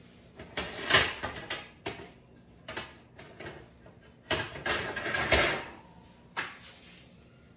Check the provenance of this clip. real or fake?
real